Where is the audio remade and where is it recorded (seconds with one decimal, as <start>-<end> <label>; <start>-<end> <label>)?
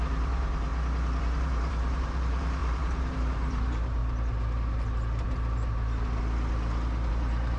0.0-0.7 remade; 0.7-1.2 recorded; 1.2-4.0 remade; 4.0-7.1 recorded; 7.1-7.6 remade